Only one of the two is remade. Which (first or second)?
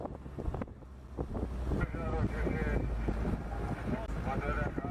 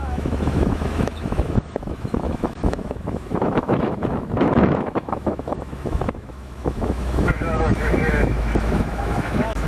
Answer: second